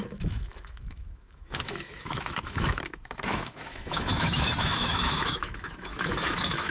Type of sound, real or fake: fake